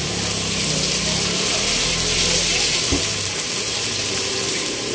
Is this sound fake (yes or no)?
no